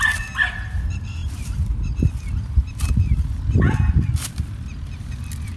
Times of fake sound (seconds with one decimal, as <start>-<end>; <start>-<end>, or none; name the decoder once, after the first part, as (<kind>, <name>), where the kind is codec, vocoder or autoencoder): none